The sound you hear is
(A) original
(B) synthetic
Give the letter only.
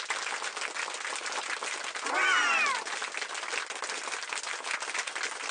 A